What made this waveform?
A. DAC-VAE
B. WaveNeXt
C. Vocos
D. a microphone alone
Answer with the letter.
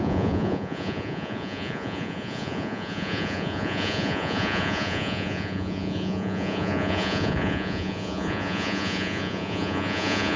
C